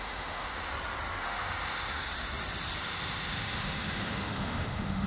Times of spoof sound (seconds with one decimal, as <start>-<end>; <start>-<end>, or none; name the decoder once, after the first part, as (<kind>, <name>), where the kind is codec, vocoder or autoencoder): 0.0-0.7 (autoencoder, DAC-VAE); 1.2-2.0; 2.8-5.1